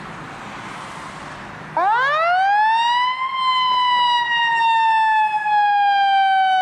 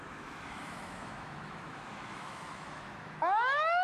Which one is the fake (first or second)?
second